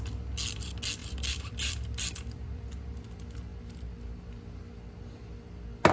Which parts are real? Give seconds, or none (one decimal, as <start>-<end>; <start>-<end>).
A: 0.0-1.0; 3.1-5.9